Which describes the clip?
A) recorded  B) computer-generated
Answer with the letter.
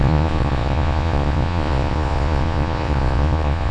B